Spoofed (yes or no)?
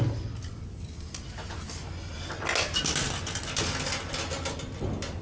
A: no